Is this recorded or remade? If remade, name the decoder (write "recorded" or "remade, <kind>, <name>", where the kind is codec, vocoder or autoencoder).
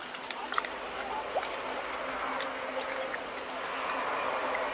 recorded